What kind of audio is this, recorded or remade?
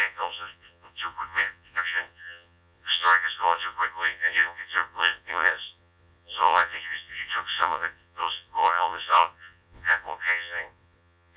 remade